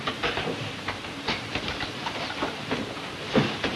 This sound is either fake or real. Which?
fake